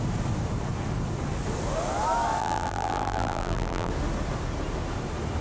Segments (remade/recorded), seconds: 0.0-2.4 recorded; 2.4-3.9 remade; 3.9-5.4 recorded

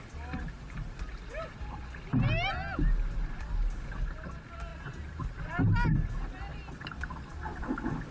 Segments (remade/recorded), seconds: 0.0-1.3 recorded; 1.3-1.8 remade; 1.8-4.7 recorded; 4.7-5.4 remade; 5.4-8.1 recorded

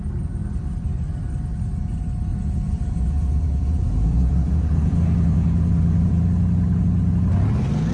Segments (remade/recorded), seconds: 0.0-2.3 recorded; 2.3-6.2 remade; 6.2-7.9 recorded

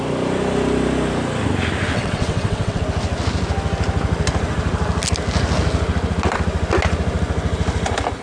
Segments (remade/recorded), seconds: 0.0-1.9 recorded; 1.9-2.8 remade; 2.8-8.2 recorded

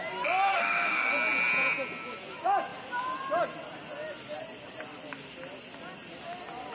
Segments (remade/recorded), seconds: 0.0-0.5 recorded; 0.5-1.1 remade; 1.1-6.7 recorded